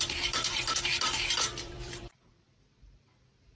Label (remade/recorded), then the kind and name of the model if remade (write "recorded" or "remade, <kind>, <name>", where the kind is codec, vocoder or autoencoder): remade, vocoder, BigVGAN v2